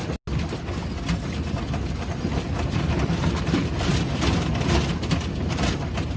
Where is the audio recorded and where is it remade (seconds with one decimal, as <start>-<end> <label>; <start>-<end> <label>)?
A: 0.0-6.2 recorded